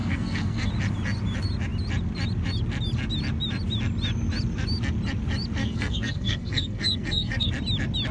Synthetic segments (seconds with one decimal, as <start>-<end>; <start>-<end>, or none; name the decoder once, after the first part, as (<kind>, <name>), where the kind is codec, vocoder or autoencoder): 0.0-0.7 (codec, SNAC); 5.6-7.5